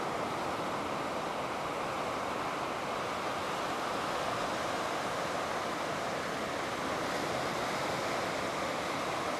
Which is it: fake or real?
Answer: real